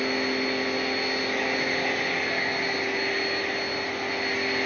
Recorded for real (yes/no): yes